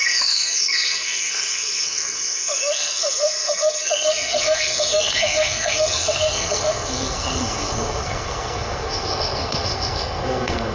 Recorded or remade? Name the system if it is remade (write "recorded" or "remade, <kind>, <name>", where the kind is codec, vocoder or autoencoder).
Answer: remade, codec, SNAC